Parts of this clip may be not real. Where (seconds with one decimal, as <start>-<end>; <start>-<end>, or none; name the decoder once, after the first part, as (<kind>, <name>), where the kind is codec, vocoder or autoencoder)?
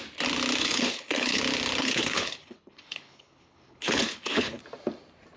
0.6-1.4 (codec, HILCodec); 1.8-4.6